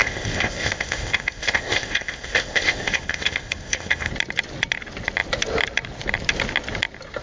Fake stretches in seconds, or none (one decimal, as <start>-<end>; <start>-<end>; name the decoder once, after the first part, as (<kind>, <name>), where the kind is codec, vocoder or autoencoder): 0.0-4.1 (codec, ZipCodec)